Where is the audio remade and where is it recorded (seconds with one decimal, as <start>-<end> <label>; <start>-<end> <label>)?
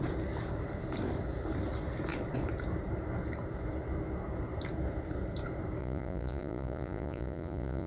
0.0-5.8 recorded; 5.8-7.9 remade